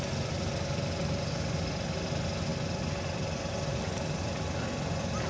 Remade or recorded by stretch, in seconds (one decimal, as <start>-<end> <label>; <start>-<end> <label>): 0.0-5.3 recorded